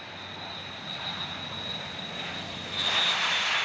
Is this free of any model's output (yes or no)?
yes